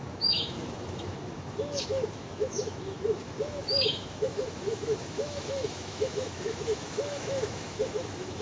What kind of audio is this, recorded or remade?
remade